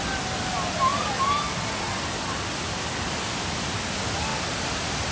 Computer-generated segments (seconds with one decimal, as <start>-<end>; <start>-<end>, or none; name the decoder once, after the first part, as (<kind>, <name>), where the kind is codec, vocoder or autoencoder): none